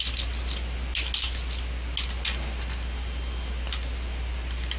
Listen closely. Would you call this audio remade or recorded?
recorded